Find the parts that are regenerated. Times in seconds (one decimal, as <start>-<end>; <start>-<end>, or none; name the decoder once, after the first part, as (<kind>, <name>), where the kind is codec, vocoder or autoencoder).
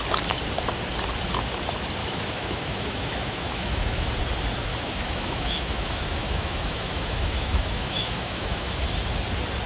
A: 2.0-4.1 (autoencoder, DAC-VAE); 4.7-8.7